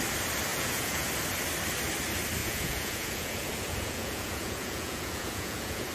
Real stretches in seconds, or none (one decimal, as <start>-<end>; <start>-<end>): 0.0-0.5; 1.1-2.4